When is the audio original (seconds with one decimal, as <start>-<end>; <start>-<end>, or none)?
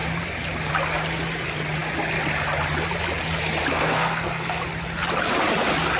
0.0-3.7; 4.6-6.0